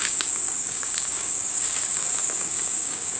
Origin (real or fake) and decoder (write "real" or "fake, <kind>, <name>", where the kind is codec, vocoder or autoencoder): fake, codec, DAC